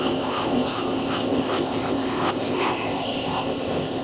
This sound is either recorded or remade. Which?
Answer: remade